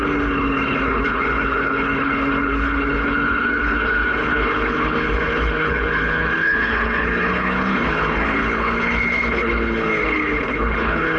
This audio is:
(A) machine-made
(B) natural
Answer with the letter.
A